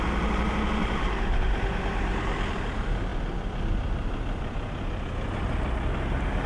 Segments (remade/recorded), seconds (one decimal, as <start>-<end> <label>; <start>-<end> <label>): 0.0-0.8 recorded; 0.8-2.2 remade; 2.2-6.5 recorded